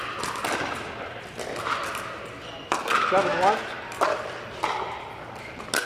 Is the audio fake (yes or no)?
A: no